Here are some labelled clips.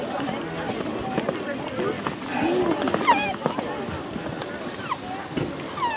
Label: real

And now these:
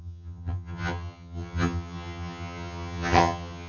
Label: fake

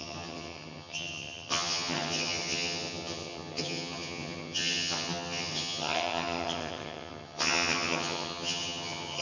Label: fake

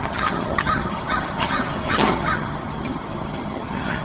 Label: fake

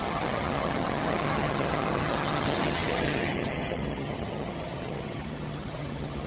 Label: fake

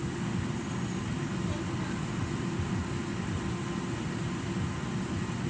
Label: real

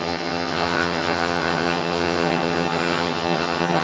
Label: fake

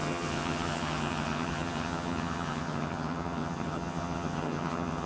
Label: fake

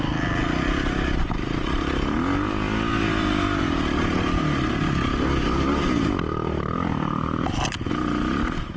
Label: real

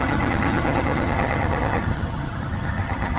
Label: fake